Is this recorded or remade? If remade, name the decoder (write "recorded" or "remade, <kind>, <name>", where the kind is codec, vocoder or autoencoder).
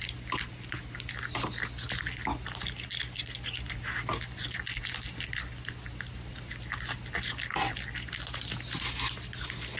recorded